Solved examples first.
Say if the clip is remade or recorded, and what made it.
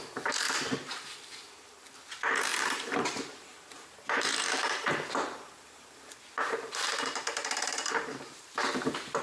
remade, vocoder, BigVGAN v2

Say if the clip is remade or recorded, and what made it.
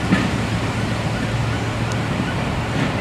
recorded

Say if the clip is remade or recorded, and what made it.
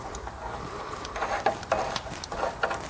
remade, vocoder, BigVGAN v2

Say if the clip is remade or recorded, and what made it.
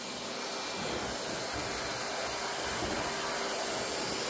recorded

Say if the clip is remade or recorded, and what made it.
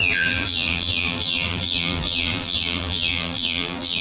remade, vocoder, BigVGAN v2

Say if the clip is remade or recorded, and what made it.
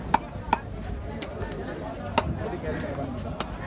recorded